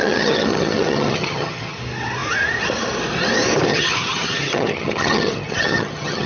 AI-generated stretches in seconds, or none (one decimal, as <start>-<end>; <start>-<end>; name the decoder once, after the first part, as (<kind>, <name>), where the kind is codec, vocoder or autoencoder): 0.0-1.8 (vocoder, HiFi-GAN); 3.7-6.3